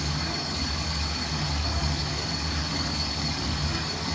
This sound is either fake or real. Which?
fake